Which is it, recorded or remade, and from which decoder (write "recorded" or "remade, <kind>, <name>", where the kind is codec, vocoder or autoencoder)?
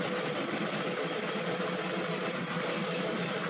remade, vocoder, BigVGAN v2